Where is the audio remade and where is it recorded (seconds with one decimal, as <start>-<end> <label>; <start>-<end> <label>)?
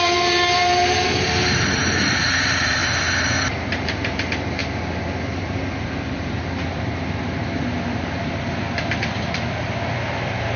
0.0-2.8 remade; 2.8-3.5 recorded; 3.5-4.6 remade; 4.6-5.8 recorded; 5.8-10.6 remade